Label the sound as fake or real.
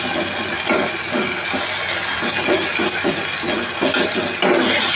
real